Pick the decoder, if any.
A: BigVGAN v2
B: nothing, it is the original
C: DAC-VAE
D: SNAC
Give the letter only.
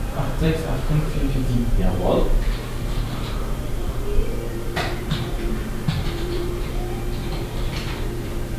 A